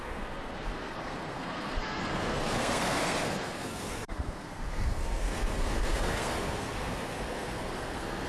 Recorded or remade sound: remade